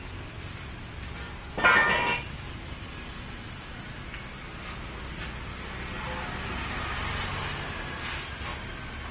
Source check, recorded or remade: recorded